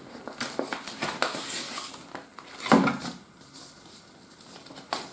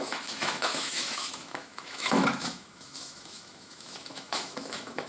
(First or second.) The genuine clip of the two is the first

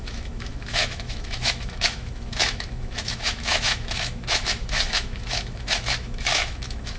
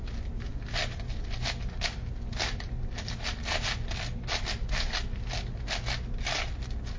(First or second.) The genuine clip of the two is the second